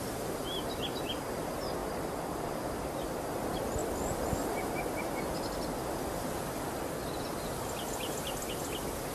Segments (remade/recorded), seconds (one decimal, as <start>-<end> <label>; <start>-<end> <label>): 0.0-9.1 recorded